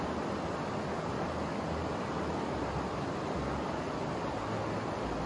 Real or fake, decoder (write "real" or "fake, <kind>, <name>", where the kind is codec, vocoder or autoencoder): real